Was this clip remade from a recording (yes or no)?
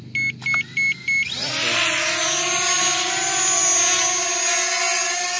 no